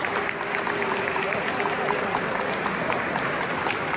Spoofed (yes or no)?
no